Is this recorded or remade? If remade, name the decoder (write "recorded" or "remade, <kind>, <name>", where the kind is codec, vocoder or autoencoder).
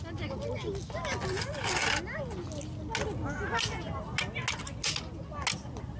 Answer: recorded